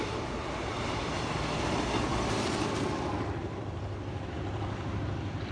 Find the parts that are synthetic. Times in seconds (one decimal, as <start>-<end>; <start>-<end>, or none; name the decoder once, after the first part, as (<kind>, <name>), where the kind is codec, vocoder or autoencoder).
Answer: 0.6-1.4 (vocoder, BigVGAN v2); 2.1-5.5